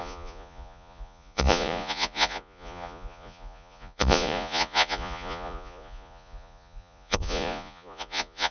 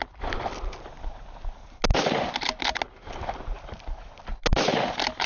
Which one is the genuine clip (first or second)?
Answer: second